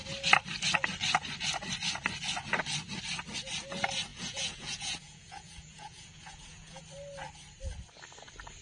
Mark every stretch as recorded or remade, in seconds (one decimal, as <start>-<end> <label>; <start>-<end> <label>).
0.0-4.1 recorded; 4.1-6.8 remade; 6.8-8.6 recorded